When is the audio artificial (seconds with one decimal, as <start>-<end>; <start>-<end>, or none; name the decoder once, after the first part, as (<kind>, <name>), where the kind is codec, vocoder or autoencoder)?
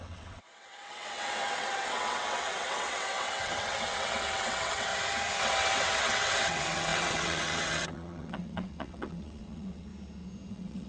0.0-4.9 (vocoder, WaveNeXt); 5.4-9.9; 10.5-10.9